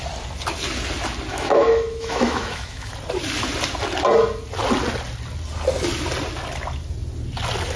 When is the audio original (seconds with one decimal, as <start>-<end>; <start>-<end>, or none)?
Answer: 0.0-1.3; 2.9-7.8